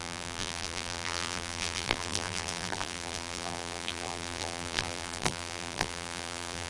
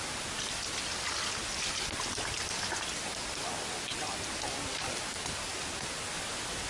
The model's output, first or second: first